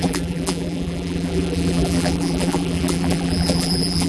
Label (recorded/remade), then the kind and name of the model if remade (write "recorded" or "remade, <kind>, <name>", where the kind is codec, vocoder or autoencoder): remade, vocoder, BigVGAN v2